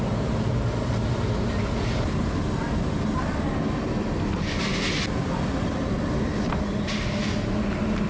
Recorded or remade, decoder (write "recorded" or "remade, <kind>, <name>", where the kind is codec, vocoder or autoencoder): recorded